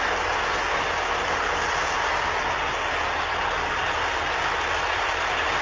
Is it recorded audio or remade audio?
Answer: recorded